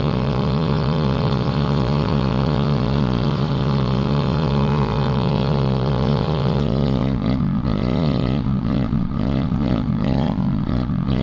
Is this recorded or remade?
remade